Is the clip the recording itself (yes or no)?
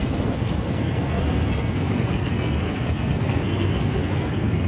no